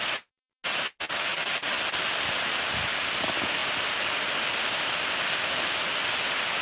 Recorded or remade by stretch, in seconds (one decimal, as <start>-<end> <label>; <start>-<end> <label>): 0.0-6.6 recorded